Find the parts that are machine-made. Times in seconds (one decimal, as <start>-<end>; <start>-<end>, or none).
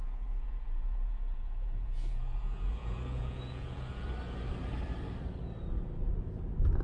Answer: 0.0-4.1